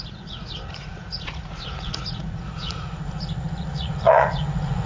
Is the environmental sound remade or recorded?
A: remade